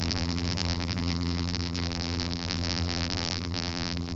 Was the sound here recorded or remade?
remade